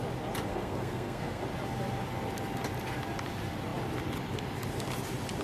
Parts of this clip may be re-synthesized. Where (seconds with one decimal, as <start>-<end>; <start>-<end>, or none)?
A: 0.5-1.4